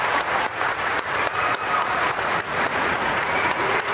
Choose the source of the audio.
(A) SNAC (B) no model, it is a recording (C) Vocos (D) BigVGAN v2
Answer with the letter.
C